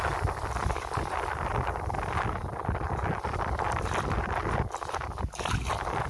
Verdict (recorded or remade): recorded